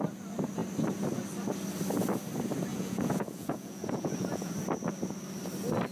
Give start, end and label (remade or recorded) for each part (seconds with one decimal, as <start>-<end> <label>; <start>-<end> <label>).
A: 0.0-2.7 recorded; 2.7-4.5 remade; 4.5-5.9 recorded

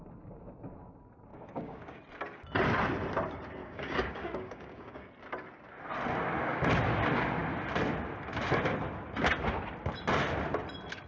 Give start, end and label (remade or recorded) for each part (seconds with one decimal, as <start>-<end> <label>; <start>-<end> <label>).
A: 0.0-1.3 recorded; 1.3-2.0 remade; 2.0-3.6 recorded; 3.6-5.1 remade; 5.1-11.1 recorded